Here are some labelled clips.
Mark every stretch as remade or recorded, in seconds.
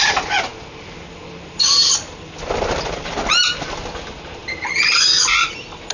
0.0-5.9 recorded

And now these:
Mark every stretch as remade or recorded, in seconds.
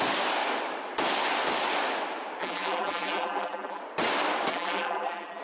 0.0-2.4 recorded; 2.4-3.8 remade; 3.8-4.5 recorded; 4.5-5.4 remade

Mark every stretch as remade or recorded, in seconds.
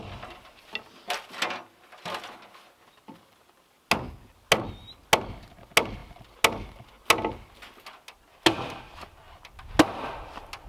0.0-10.7 recorded